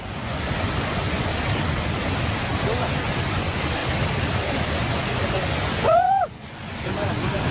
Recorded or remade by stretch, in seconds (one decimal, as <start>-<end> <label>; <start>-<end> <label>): 0.0-1.3 remade; 1.3-3.3 recorded; 3.3-3.8 remade; 3.8-4.6 recorded; 4.6-7.5 remade